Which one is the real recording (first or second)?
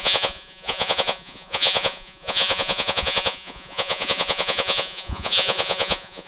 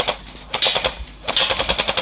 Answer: second